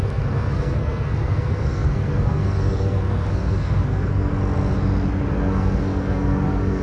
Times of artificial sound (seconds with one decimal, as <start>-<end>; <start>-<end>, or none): 0.0-4.3; 5.3-6.8